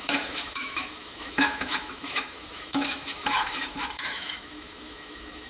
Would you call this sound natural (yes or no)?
no